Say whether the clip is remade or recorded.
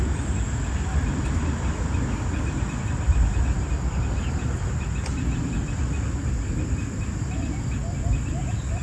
recorded